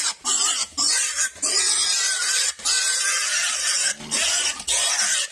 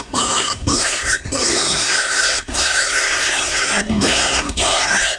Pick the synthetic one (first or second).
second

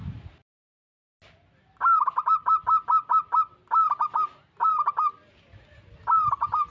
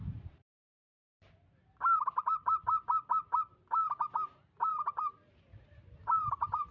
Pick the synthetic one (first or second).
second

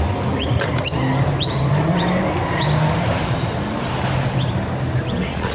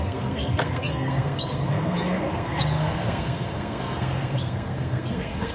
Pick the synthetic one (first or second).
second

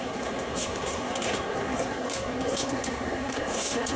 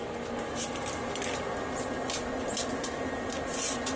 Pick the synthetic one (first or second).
first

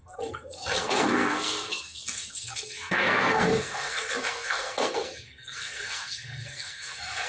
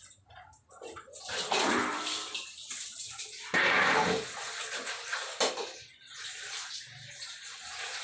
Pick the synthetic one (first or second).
first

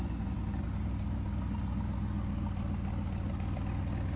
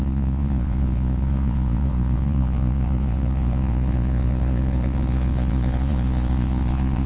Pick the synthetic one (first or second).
second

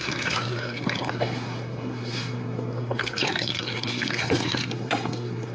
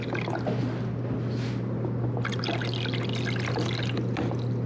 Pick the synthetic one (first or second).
first